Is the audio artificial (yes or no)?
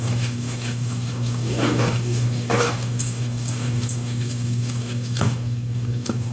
yes